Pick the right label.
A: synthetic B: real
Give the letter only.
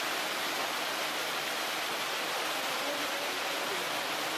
B